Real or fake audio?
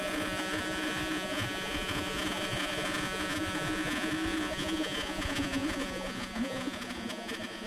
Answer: fake